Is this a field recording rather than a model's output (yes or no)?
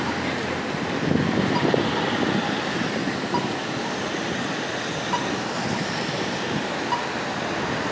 yes